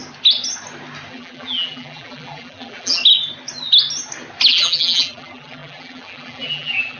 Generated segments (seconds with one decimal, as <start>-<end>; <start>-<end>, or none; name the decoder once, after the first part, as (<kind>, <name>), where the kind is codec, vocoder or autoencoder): 1.1-3.0 (vocoder, BigVGAN v2); 4.5-7.0